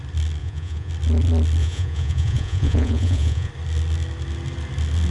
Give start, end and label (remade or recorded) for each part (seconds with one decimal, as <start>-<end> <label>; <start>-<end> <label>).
0.0-0.4 recorded; 0.4-0.9 remade; 0.9-1.6 recorded; 1.6-3.5 remade; 3.5-5.1 recorded